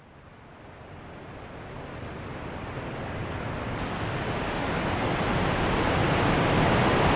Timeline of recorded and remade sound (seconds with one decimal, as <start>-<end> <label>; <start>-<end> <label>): 0.0-7.2 recorded